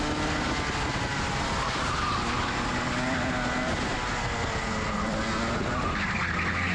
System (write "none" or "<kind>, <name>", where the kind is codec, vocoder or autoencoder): none